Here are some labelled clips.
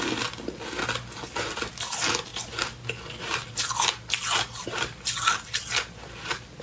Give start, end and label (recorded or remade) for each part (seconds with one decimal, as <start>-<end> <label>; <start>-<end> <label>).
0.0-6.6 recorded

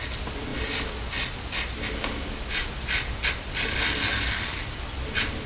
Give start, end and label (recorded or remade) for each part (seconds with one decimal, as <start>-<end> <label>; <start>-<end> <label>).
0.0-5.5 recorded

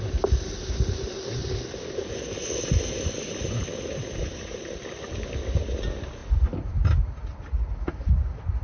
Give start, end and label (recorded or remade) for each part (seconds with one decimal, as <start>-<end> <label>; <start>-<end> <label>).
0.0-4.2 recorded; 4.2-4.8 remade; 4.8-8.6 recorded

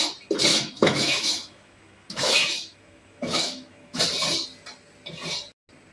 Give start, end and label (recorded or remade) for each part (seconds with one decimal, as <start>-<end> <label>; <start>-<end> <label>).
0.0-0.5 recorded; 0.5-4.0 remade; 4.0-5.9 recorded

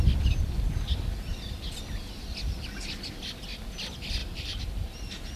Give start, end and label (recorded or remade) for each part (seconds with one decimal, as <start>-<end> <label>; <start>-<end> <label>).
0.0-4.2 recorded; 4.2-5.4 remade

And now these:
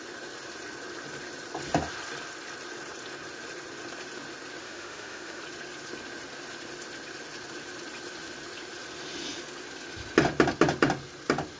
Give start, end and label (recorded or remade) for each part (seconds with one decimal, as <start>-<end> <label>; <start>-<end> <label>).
0.0-4.6 recorded; 4.6-5.4 remade; 5.4-11.6 recorded

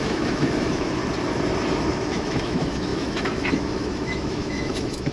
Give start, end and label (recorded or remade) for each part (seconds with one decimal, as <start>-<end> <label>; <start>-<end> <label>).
0.0-1.0 remade; 1.0-1.9 recorded; 1.9-5.1 remade

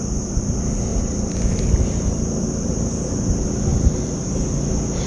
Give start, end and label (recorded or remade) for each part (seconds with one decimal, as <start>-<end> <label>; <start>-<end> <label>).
0.0-0.9 recorded; 0.9-2.7 remade; 2.7-3.7 recorded; 3.7-4.3 remade; 4.3-5.1 recorded